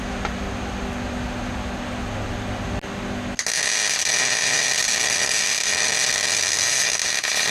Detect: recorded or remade recorded